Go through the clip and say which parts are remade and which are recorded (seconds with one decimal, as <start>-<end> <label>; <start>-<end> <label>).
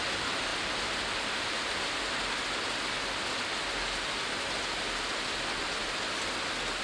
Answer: 0.0-6.8 recorded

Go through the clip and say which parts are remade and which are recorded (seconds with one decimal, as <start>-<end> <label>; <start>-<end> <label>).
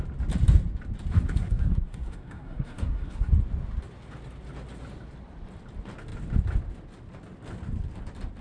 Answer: 0.0-1.1 recorded; 1.1-3.3 remade; 3.3-8.4 recorded